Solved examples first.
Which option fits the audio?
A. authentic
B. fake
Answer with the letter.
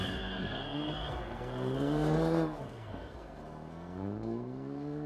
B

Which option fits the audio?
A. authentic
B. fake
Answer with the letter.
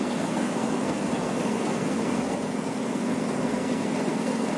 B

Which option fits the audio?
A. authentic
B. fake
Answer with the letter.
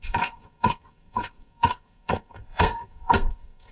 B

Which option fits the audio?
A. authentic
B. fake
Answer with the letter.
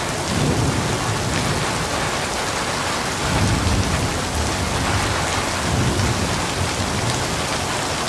A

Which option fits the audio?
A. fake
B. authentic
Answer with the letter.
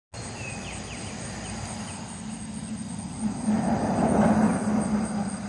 B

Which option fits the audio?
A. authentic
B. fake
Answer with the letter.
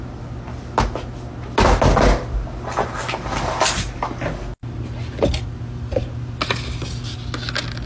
A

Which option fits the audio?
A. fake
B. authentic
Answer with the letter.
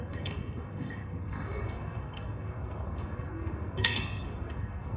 A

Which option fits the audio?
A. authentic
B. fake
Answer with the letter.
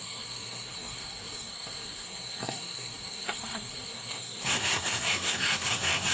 B